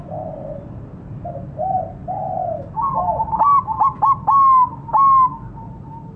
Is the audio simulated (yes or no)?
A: no